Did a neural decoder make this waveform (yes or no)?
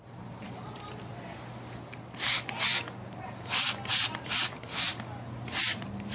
no